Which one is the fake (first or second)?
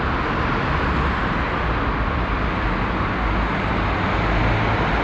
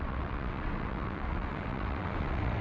second